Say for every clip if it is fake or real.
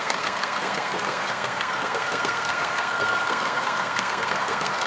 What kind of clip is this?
fake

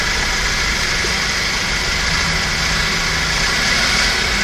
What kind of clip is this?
real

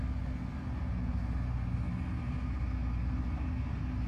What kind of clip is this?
real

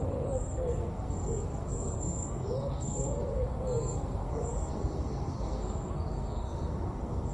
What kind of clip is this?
fake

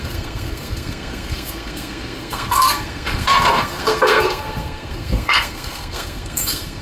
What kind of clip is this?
fake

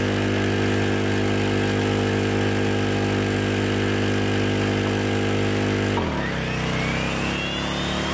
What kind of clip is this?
real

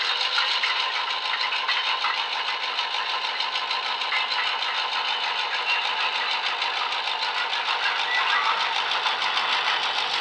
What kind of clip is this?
real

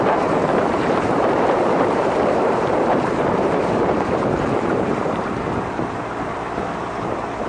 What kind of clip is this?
fake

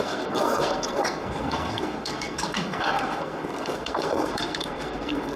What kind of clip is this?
fake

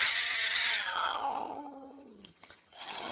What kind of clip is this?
fake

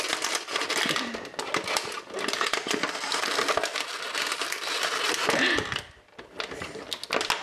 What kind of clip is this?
real